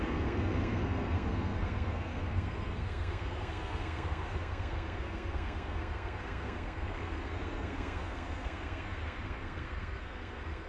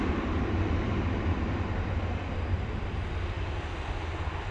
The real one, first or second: second